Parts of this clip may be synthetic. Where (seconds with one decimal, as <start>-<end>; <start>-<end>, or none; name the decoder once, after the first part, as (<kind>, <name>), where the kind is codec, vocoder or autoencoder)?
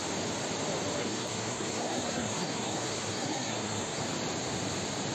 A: 1.0-4.0 (codec, SNAC)